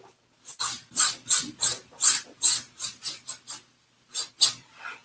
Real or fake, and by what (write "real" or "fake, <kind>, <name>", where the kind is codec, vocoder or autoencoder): real